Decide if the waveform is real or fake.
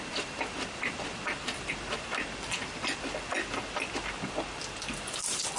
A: fake